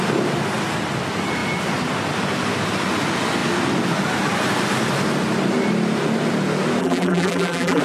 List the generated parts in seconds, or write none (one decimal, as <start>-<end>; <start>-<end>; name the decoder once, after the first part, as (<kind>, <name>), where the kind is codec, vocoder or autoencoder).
6.8-7.8 (vocoder, BigVGAN v2)